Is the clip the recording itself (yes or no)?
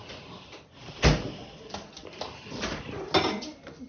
yes